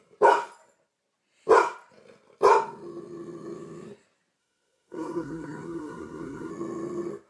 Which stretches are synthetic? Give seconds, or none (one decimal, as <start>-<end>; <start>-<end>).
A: 4.4-6.5